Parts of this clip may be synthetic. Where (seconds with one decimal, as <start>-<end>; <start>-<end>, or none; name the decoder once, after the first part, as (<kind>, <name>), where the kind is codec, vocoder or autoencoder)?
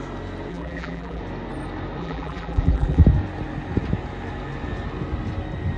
0.5-1.2 (vocoder, BigVGAN v2); 2.0-3.0